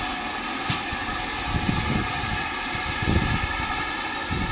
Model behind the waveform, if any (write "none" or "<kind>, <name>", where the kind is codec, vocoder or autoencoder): none